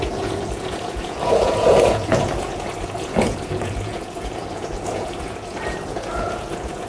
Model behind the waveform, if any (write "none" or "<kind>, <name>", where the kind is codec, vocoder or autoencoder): vocoder, Vocos